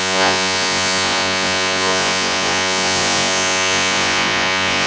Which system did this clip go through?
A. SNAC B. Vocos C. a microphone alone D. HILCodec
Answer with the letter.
B